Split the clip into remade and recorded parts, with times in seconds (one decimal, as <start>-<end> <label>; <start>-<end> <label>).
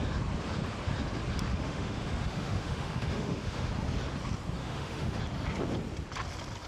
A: 0.0-1.5 recorded; 1.5-3.7 remade; 3.7-4.6 recorded; 4.6-5.2 remade; 5.2-6.7 recorded